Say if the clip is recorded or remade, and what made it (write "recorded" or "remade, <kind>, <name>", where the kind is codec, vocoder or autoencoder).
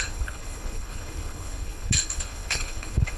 remade, codec, HILCodec